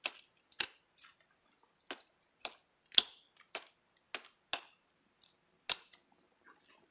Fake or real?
real